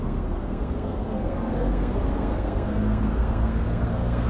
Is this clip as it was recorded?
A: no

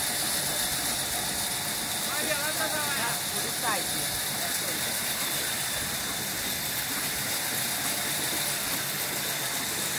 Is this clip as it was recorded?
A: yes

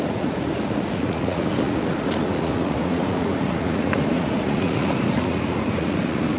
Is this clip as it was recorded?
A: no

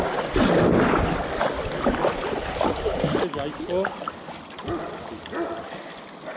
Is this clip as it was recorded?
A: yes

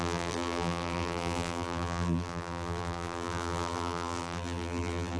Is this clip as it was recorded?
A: no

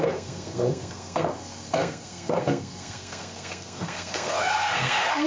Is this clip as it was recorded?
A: no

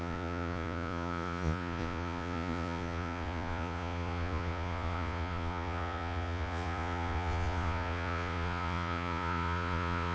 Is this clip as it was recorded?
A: no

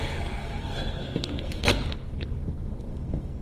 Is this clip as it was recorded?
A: no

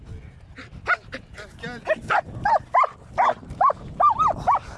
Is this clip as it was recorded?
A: yes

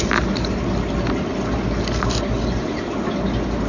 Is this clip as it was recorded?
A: yes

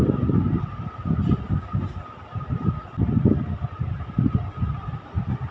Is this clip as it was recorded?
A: yes